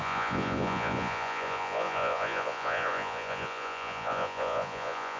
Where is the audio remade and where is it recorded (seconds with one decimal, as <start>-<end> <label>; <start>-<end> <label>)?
0.0-5.2 remade